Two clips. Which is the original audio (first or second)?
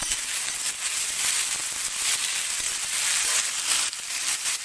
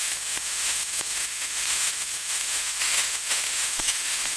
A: first